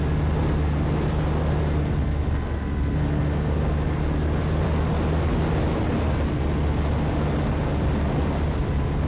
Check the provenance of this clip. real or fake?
real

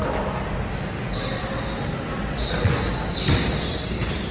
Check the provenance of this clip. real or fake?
real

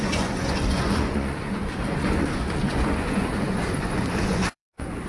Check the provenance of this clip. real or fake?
fake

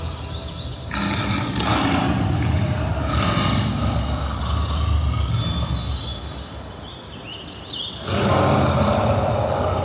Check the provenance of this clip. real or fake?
real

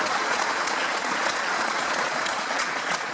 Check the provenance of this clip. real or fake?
fake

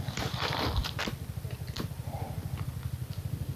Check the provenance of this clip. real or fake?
fake